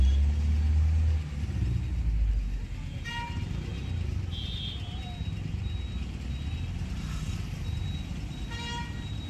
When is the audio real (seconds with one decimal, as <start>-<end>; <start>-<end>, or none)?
0.0-9.3